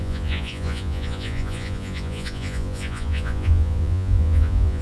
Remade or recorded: remade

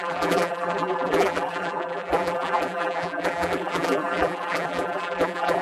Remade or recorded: remade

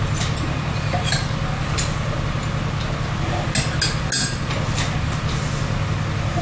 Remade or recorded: recorded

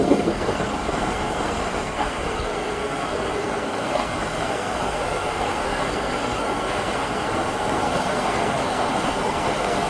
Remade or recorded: remade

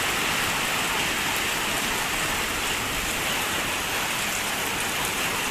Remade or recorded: remade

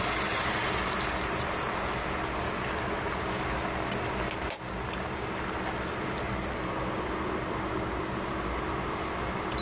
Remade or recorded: recorded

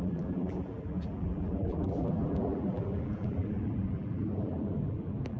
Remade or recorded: remade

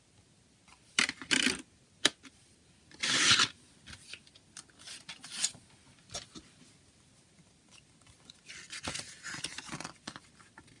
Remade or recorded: recorded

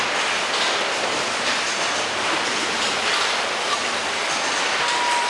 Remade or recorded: remade